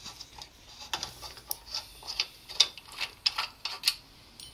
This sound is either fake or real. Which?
real